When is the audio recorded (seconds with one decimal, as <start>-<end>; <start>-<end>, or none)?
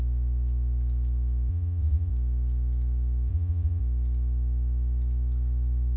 0.0-1.5; 2.1-3.3; 3.8-6.0